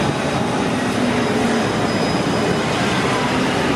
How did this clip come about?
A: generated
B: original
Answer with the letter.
B